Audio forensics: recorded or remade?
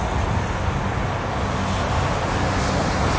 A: recorded